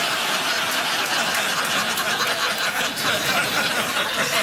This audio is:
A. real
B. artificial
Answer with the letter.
A